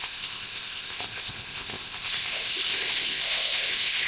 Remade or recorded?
remade